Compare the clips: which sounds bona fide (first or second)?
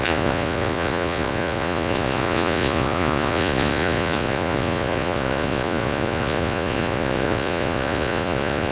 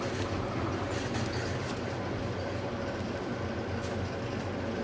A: second